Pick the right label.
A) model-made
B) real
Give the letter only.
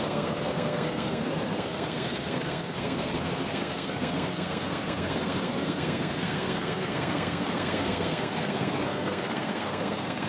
A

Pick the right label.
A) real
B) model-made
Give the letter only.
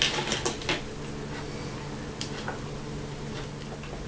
A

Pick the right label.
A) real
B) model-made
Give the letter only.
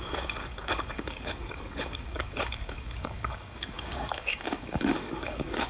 B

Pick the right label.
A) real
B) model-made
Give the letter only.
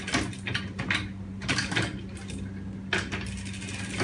A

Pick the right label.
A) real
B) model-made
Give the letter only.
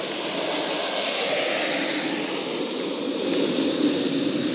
A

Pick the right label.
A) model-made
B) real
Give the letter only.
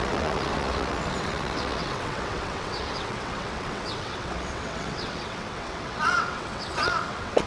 A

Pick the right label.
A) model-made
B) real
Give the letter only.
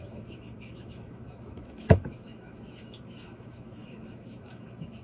A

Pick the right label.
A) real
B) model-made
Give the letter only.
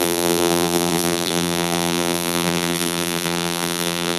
B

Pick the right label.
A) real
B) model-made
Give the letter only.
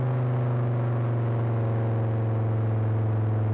A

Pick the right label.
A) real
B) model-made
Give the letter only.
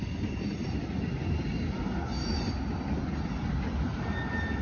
A